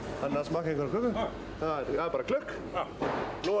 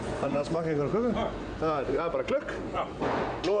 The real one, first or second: first